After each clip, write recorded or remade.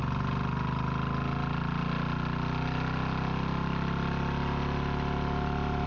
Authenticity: recorded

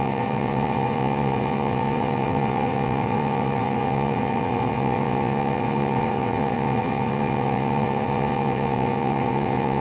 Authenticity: remade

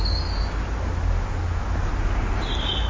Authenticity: recorded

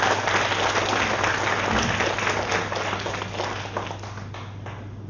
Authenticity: recorded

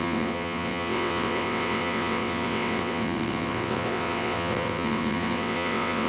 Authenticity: remade